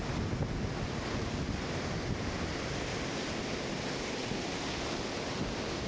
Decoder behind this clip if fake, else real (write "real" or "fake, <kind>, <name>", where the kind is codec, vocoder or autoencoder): real